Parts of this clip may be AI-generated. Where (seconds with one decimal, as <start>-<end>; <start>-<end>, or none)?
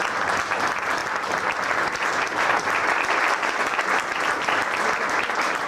none